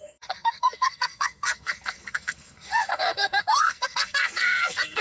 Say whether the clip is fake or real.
fake